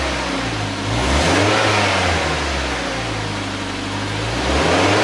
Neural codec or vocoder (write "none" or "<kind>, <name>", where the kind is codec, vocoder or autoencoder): none